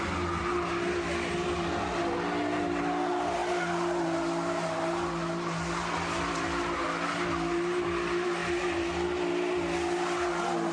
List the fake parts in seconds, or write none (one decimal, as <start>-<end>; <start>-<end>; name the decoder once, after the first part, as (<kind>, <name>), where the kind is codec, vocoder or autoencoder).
none